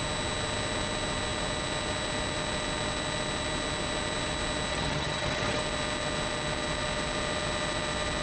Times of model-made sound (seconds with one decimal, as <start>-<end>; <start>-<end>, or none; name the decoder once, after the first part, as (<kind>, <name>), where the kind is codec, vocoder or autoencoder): 4.7-5.6 (vocoder, HiFi-GAN)